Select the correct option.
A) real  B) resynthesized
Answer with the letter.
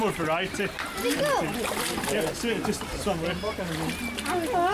A